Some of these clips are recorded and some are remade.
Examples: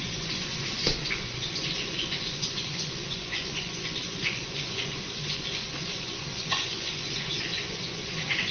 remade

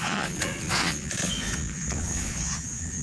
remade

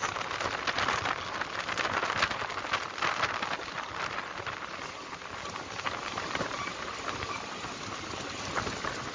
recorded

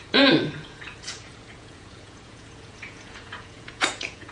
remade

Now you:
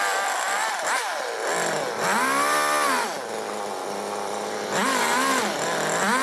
recorded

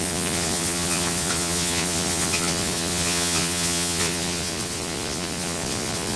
remade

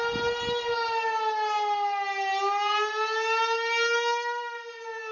recorded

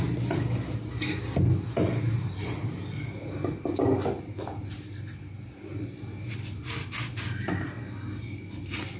recorded